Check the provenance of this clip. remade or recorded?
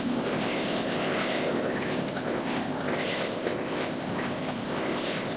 remade